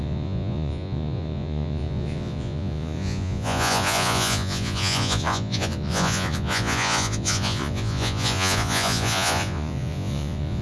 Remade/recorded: remade